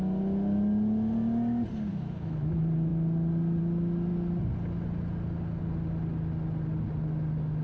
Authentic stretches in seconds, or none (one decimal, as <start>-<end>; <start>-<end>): 0.0-1.9; 2.5-7.6